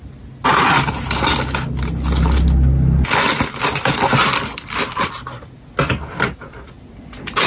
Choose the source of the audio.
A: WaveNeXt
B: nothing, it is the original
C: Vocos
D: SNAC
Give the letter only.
B